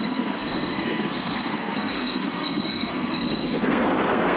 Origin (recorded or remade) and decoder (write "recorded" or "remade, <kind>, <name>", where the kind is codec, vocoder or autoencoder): remade, codec, SNAC